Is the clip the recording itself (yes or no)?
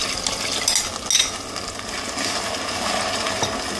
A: yes